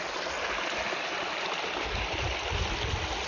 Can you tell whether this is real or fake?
real